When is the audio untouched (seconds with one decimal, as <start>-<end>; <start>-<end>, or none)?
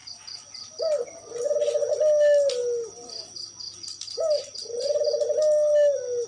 0.0-6.3